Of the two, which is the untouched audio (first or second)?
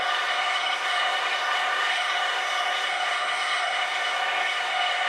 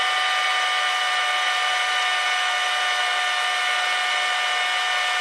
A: second